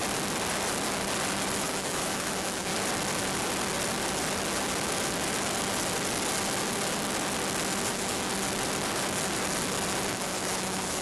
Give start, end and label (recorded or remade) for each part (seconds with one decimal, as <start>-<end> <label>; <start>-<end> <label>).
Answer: 0.0-1.6 recorded; 1.6-2.7 remade; 2.7-7.9 recorded; 7.9-8.3 remade; 8.3-10.1 recorded; 10.1-11.0 remade